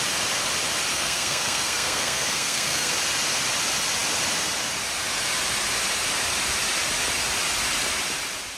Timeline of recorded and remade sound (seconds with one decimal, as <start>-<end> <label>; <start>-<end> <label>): 0.0-0.9 recorded; 0.9-2.9 remade; 2.9-8.6 recorded